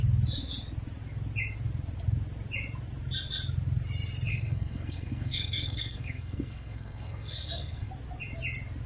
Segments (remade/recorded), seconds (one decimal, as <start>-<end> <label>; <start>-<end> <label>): 0.0-4.3 recorded; 4.3-7.9 remade; 7.9-8.9 recorded